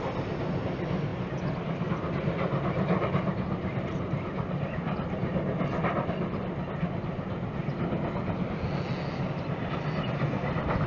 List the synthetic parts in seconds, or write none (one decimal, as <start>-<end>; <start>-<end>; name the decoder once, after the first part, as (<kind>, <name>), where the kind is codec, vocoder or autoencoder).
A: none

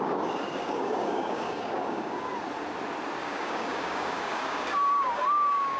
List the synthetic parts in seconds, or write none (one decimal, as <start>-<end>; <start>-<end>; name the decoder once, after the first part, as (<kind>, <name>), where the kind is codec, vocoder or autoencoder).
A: 0.0-2.3 (codec, DAC); 3.2-5.8

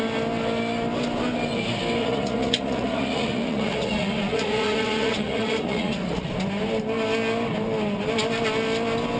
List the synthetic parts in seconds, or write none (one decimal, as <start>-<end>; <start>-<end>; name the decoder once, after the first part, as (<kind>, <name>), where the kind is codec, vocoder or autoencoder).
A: 2.0-6.3 (vocoder, Vocos)

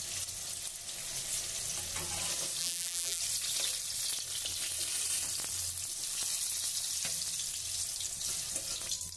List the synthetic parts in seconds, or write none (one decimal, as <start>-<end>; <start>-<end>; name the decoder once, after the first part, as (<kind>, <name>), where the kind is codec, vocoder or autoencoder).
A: 2.6-3.2 (vocoder, BigVGAN v2)

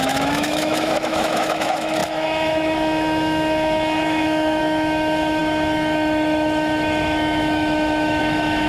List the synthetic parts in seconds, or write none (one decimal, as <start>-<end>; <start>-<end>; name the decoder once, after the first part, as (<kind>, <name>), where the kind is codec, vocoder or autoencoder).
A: 0.0-8.7 (autoencoder, DAC-VAE)